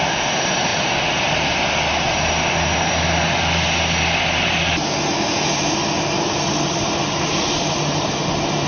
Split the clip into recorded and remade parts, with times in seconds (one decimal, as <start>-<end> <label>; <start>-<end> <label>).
0.0-8.7 recorded